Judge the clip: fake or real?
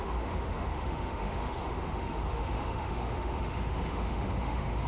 fake